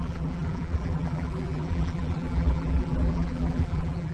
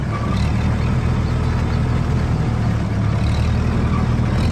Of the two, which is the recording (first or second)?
second